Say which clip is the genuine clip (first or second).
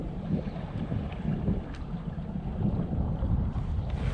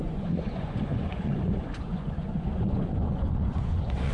first